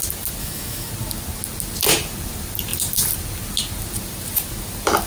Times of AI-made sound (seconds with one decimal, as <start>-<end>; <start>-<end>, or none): 0.4-0.9